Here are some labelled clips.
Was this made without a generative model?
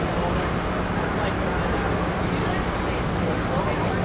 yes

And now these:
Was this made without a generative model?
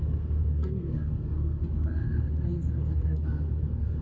no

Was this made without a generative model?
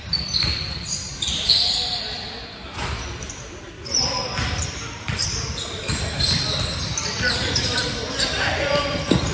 no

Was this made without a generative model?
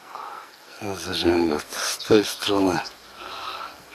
no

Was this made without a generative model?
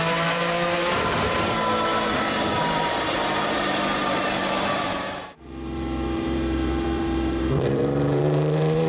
no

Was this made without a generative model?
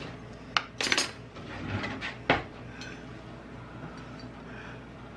yes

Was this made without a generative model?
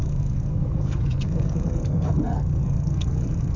no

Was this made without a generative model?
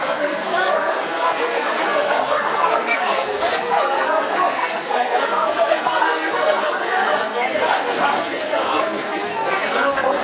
no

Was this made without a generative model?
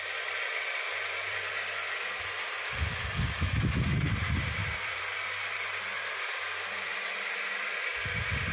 no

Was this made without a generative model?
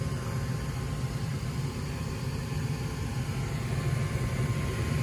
yes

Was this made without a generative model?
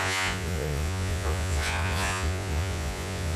no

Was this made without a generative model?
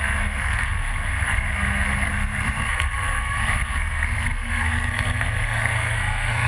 no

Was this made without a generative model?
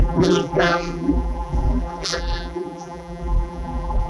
no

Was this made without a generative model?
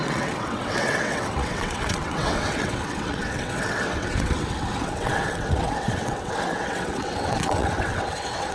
no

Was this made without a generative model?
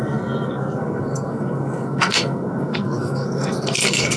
no